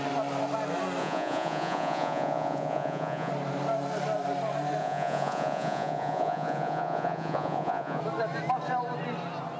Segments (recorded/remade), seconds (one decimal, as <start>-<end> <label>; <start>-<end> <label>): 0.0-1.0 recorded; 1.0-3.3 remade; 3.3-4.8 recorded; 4.8-8.0 remade; 8.0-9.6 recorded